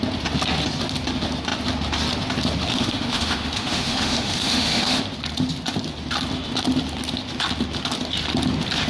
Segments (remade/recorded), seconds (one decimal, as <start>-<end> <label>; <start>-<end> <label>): 0.0-2.7 recorded; 2.7-5.0 remade; 5.0-8.9 recorded